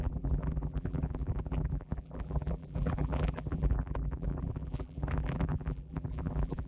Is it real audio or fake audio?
fake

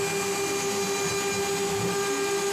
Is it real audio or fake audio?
real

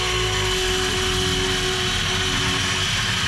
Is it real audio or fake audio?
real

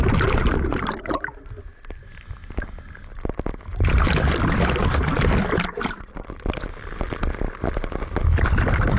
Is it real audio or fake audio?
real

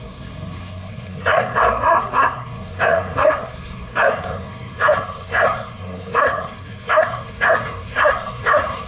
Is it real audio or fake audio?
fake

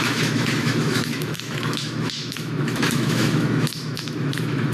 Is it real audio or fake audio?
fake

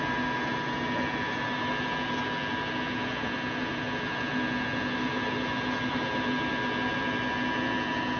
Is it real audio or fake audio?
real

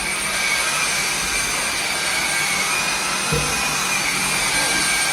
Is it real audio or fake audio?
real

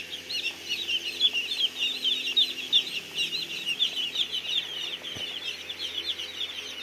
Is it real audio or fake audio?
real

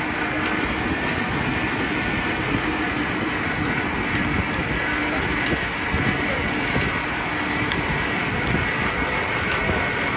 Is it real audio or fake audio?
real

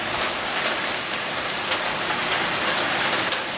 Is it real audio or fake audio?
real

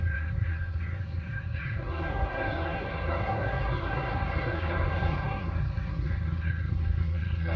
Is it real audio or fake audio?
fake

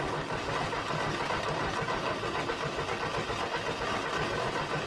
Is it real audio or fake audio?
real